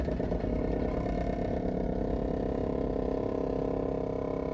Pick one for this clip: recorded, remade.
recorded